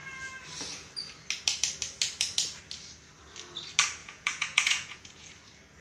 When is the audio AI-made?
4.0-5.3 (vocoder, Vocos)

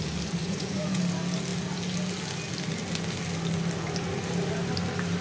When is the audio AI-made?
0.4-1.0 (vocoder, Vocos)

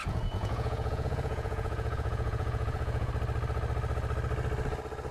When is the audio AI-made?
0.0-3.1 (vocoder, Vocos)

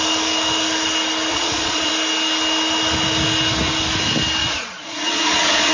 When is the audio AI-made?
1.3-1.9 (vocoder, Vocos); 4.4-5.7